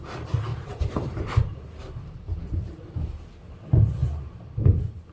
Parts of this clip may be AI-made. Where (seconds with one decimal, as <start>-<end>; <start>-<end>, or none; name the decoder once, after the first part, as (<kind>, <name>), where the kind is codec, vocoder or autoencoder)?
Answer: 0.5-3.6 (vocoder, BigVGAN v2)